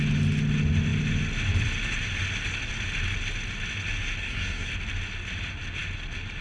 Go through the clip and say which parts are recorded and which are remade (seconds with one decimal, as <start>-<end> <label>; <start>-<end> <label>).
0.0-4.2 recorded; 4.2-4.7 remade; 4.7-6.4 recorded